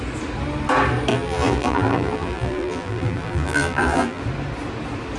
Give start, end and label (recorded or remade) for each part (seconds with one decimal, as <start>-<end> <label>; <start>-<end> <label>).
0.0-1.1 recorded; 1.1-4.2 remade; 4.2-5.2 recorded